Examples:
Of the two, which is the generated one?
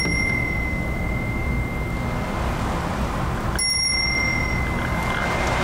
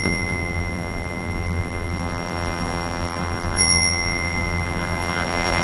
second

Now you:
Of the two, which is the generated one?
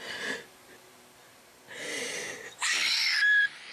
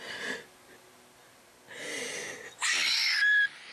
first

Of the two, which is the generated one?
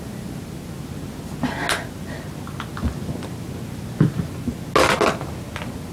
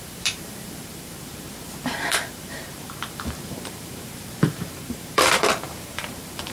second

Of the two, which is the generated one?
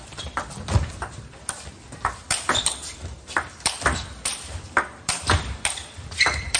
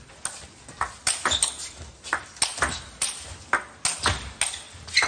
first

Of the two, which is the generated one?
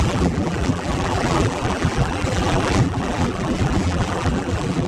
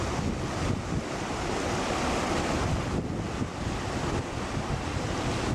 first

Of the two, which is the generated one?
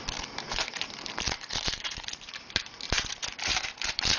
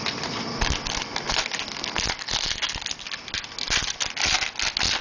first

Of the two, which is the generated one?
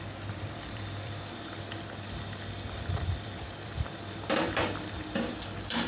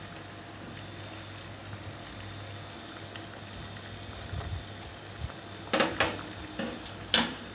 first